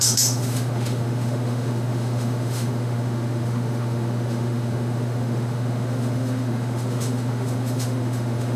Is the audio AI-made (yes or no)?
yes